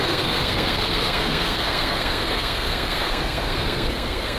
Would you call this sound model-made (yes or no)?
yes